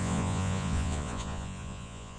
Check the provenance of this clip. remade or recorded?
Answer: remade